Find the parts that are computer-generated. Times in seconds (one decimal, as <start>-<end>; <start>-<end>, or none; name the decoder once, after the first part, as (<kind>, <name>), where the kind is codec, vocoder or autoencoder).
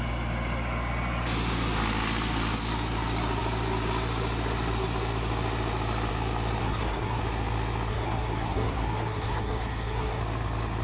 6.6-7.2 (codec, SNAC); 7.9-10.2